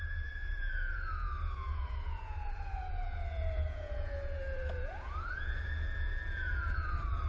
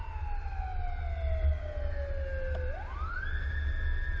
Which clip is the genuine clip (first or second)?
second